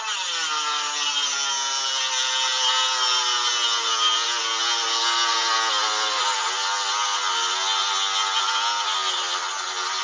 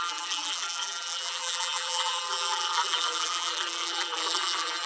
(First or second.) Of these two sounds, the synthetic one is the second